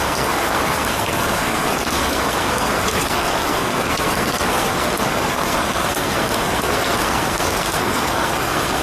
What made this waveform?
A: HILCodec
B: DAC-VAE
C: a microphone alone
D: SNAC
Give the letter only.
D